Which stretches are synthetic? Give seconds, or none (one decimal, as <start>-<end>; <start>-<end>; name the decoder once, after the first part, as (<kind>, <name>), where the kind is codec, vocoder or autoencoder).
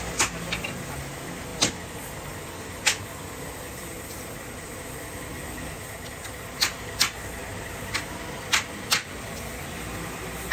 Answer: none